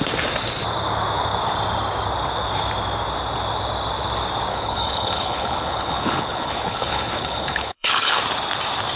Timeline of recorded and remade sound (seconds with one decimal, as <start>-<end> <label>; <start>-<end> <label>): 0.0-4.5 recorded; 4.5-8.2 remade; 8.2-9.0 recorded